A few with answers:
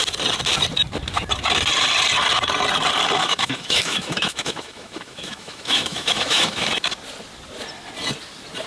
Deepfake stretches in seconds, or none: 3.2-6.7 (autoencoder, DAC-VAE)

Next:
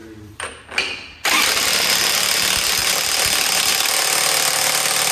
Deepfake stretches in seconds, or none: 0.0-1.7 (vocoder, BigVGAN v2); 2.8-3.7

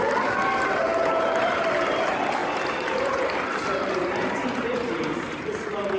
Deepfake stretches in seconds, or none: 0.9-1.6 (vocoder, BigVGAN v2); 2.4-6.0